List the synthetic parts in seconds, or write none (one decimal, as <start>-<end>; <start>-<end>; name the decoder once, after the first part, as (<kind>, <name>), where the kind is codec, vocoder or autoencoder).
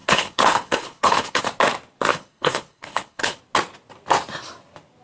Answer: 0.0-1.4 (codec, HILCodec); 2.1-3.4